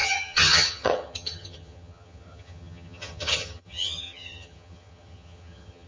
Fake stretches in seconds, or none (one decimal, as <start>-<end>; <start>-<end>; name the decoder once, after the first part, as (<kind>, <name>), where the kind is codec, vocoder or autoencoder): 0.0-5.9 (vocoder, HiFi-GAN)